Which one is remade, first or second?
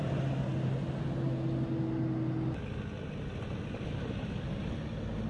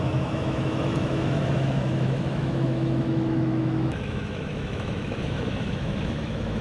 second